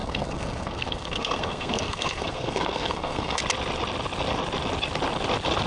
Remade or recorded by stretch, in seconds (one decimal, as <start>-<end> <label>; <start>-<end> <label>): 0.0-3.4 remade; 3.4-5.7 recorded